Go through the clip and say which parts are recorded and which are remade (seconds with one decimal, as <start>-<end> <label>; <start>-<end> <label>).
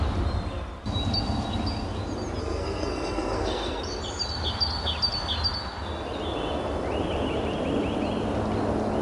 0.0-2.4 recorded; 2.4-3.8 remade; 3.8-9.0 recorded